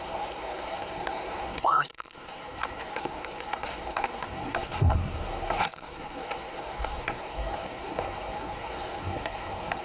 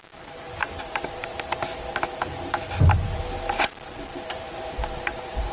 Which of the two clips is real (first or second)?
second